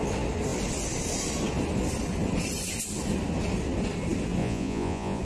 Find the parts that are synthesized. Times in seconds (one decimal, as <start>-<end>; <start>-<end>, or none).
4.4-5.2